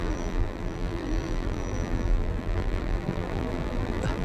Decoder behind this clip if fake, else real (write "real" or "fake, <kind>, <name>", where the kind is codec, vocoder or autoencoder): fake, vocoder, BigVGAN v2